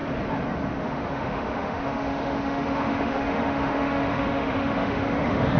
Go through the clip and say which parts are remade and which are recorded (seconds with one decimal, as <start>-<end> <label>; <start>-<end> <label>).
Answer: 0.0-0.7 recorded; 0.7-5.6 remade